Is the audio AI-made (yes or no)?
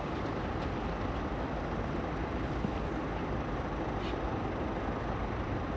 no